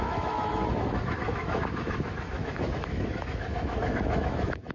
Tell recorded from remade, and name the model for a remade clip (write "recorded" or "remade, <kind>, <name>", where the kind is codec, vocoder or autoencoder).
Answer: remade, autoencoder, DAC-VAE